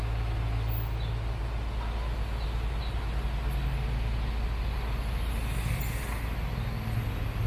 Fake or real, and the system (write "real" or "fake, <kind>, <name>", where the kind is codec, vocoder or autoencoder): real